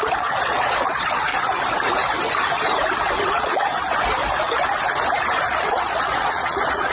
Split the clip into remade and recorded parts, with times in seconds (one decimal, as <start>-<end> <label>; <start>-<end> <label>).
0.0-1.3 remade; 1.3-3.3 recorded; 3.3-3.7 remade; 3.7-5.6 recorded; 5.6-6.9 remade